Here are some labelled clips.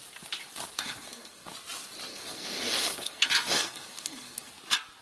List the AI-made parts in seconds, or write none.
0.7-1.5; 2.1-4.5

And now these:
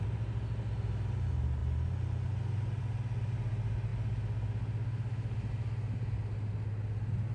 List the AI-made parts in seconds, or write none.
none

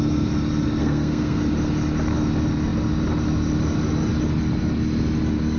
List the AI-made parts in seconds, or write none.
0.8-1.4

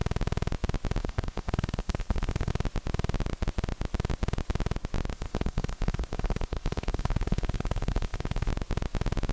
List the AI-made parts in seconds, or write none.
1.0-2.5; 5.1-8.5

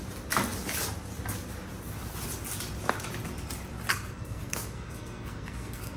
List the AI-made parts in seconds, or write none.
3.9-6.0